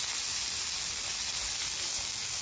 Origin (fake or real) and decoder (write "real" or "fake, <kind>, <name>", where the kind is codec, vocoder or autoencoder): real